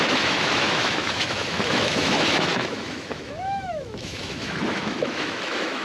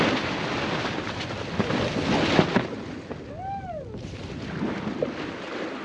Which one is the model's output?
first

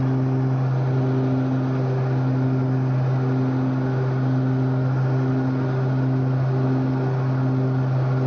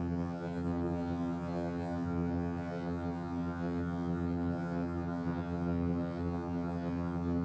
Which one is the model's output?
second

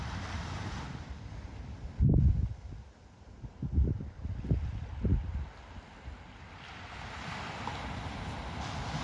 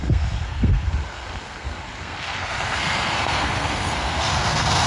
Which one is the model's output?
second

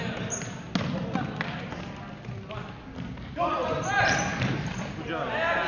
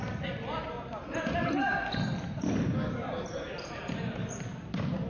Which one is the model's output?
second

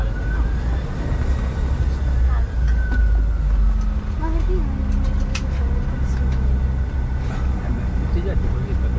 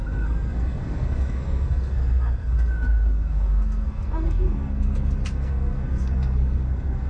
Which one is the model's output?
second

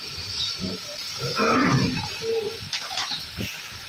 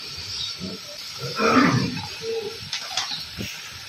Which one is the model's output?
second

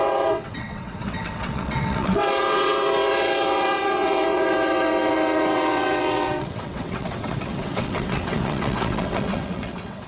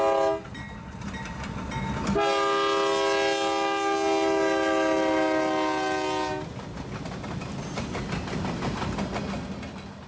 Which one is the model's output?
first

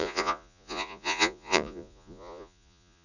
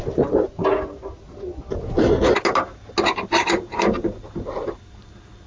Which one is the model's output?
first